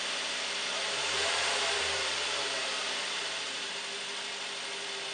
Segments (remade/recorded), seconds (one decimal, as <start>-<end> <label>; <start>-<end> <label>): 0.0-0.6 recorded; 0.6-3.7 remade; 3.7-5.1 recorded